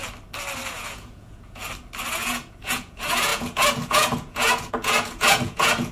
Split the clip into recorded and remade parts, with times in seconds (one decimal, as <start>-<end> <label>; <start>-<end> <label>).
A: 0.0-0.7 recorded; 0.7-1.6 remade; 1.6-2.1 recorded; 2.1-5.9 remade